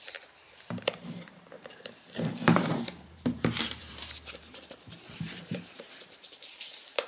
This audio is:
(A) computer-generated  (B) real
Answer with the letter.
A